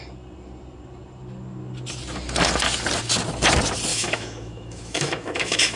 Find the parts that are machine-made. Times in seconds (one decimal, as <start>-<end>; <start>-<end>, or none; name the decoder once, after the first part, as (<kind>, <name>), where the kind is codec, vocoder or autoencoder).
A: 3.9-5.8 (autoencoder, DAC-VAE)